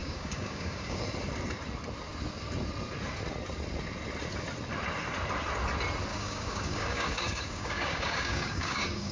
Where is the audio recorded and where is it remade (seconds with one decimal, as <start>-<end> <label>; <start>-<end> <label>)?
0.0-1.0 remade; 1.0-6.1 recorded; 6.1-9.1 remade